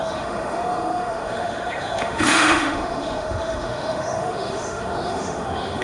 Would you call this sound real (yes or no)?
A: no